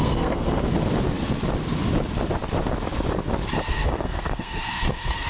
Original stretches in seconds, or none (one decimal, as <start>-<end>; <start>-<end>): 0.5-3.7